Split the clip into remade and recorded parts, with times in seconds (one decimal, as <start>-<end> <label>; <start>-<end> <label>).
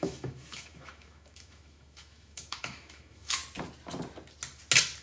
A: 0.0-3.4 remade; 3.4-5.0 recorded